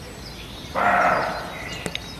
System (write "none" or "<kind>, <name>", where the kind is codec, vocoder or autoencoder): none